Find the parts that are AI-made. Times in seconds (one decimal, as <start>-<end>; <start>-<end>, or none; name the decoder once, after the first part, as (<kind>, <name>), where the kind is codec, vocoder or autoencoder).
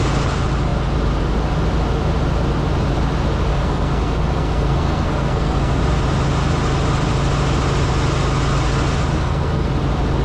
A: 3.5-5.8 (codec, SNAC); 9.1-9.7